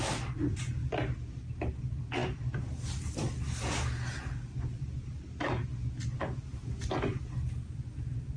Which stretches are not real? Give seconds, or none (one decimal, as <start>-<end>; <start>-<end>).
none